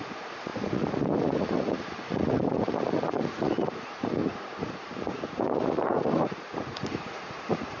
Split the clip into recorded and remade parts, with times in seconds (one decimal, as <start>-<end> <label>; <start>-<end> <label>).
0.0-7.8 remade